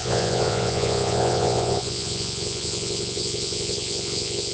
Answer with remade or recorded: remade